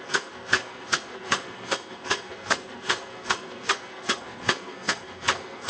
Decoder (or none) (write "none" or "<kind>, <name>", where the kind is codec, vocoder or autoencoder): codec, SNAC